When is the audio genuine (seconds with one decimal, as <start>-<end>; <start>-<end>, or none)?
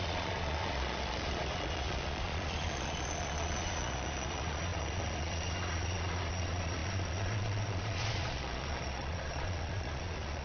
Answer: none